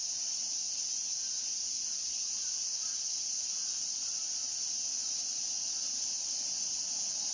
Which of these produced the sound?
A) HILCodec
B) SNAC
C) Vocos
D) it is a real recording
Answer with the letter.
D